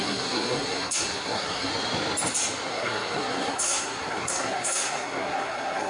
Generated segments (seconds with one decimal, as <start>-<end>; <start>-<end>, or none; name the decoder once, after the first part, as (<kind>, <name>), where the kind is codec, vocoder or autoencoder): 0.0-1.7 (codec, SNAC); 2.7-5.9

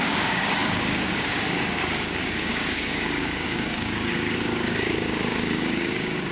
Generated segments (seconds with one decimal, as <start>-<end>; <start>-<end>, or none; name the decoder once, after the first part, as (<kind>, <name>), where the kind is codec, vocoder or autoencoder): 0.0-6.3 (codec, DAC)

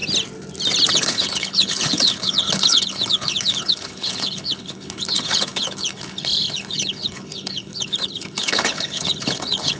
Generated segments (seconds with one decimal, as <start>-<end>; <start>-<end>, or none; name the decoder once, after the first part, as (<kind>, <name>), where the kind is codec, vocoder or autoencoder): 0.9-9.8 (codec, HILCodec)

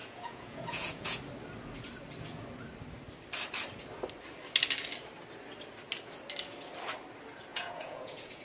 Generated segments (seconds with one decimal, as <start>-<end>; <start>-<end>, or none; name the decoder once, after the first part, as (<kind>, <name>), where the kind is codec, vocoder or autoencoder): 0.0-1.2 (vocoder, Vocos); 7.5-8.4